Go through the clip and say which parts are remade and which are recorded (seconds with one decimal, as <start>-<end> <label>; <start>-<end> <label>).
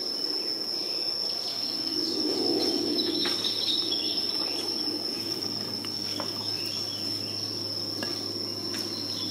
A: 0.0-1.5 recorded; 1.5-4.3 remade; 4.3-5.1 recorded; 5.1-6.6 remade; 6.6-9.3 recorded